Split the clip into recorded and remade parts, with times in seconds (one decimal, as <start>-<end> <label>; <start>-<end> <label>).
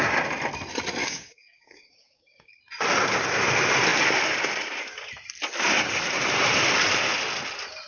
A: 0.0-1.0 recorded; 1.0-2.6 remade; 2.6-7.9 recorded